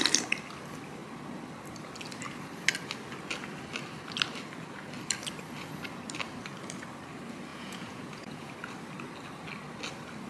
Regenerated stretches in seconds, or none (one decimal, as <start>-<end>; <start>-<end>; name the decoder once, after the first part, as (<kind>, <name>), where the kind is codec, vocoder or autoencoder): 7.5-8.5 (vocoder, Vocos)